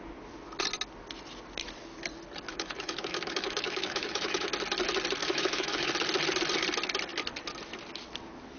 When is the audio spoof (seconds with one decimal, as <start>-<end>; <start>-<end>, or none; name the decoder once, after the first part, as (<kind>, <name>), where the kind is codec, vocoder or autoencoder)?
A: 2.5-4.5 (autoencoder, DAC-VAE); 5.2-5.9